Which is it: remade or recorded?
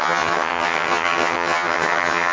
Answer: remade